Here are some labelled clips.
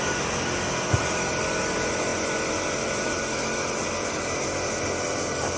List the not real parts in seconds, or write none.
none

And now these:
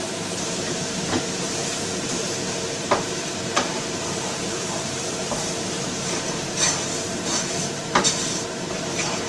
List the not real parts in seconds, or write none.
0.0-9.3 (vocoder, BigVGAN v2)

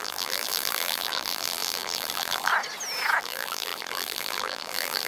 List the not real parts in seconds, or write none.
0.0-2.5 (vocoder, BigVGAN v2); 3.2-5.1

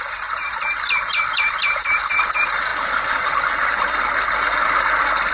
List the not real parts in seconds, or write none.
0.0-5.3 (vocoder, BigVGAN v2)

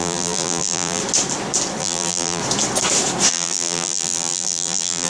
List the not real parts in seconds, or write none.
0.0-1.0 (vocoder, BigVGAN v2); 1.8-2.4; 3.3-5.1